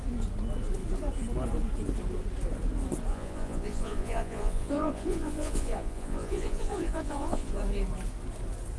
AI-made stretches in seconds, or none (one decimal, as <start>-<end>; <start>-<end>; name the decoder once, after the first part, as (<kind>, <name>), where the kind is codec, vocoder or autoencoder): 3.1-7.6 (vocoder, Vocos)